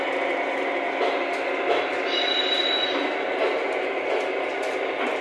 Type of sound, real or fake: real